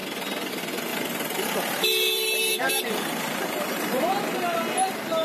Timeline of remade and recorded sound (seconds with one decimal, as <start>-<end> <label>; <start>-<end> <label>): 0.0-0.9 recorded; 0.9-4.0 remade; 4.0-5.2 recorded